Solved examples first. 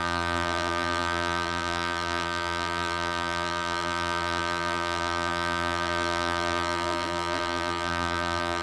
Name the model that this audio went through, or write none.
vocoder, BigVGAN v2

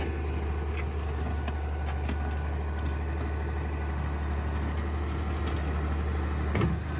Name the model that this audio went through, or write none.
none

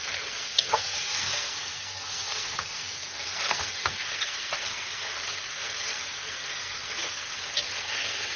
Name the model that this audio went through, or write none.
codec, SNAC